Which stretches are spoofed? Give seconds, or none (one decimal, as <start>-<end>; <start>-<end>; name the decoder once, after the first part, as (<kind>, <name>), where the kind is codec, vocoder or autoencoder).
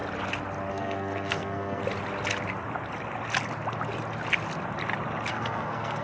0.7-1.8 (codec, SNAC); 5.3-6.0